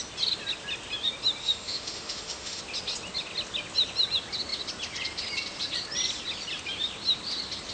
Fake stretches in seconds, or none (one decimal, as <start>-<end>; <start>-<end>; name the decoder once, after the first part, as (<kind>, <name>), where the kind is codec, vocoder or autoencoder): 1.4-2.6 (autoencoder, DAC-VAE)